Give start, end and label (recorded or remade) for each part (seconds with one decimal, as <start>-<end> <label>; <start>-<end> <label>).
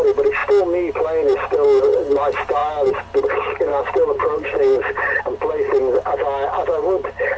0.0-3.7 recorded; 3.7-5.2 remade; 5.2-7.4 recorded